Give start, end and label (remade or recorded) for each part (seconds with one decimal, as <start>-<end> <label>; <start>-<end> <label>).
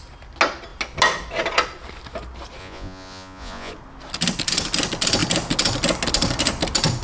0.0-2.6 recorded; 2.6-3.7 remade; 3.7-7.0 recorded